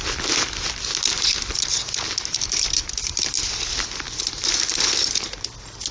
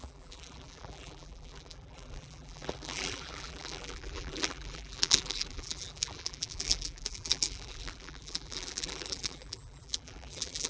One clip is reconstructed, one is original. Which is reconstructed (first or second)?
second